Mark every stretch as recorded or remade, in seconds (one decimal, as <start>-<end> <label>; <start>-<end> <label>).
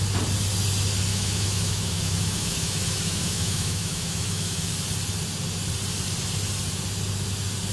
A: 0.0-1.1 recorded; 1.1-4.7 remade; 4.7-7.7 recorded